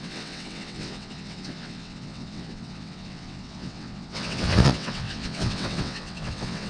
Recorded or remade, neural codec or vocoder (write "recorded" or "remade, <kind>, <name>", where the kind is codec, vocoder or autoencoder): remade, vocoder, WaveNeXt